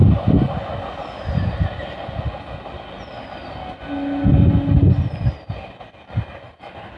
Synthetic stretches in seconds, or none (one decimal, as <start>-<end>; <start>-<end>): none